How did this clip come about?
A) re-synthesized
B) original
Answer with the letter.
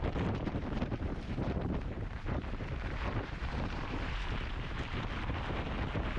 A